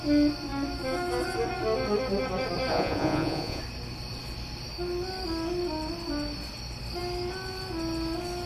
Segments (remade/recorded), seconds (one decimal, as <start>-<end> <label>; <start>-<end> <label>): 0.0-2.7 recorded; 2.7-3.6 remade; 3.6-8.5 recorded